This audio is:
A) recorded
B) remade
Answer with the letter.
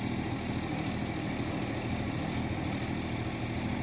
A